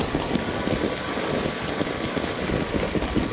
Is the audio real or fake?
real